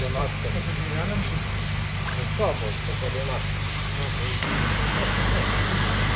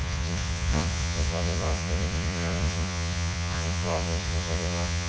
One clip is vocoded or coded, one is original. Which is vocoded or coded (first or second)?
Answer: second